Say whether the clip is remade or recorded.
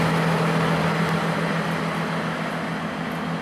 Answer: recorded